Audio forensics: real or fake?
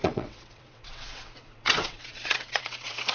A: fake